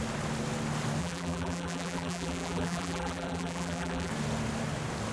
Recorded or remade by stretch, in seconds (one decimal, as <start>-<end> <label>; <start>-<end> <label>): 0.0-1.0 recorded; 1.0-4.1 remade; 4.1-5.1 recorded